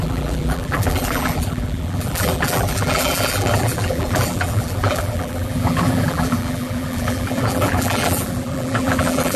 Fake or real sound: fake